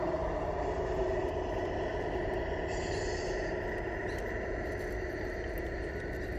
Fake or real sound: real